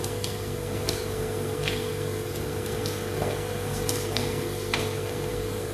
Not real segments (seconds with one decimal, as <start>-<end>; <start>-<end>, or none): 0.0-5.7